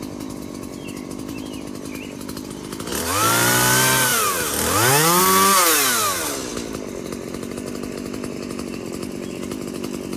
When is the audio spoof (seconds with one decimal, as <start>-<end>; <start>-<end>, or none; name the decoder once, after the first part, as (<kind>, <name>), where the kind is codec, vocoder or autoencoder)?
none